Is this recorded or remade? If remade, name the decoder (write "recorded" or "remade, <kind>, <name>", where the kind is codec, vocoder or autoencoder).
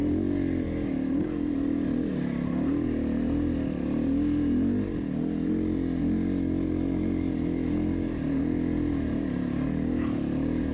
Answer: recorded